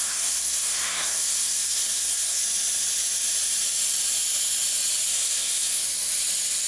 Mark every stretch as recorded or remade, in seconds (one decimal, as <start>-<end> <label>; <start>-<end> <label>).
0.0-2.4 remade; 2.4-5.1 recorded; 5.1-5.8 remade; 5.8-6.7 recorded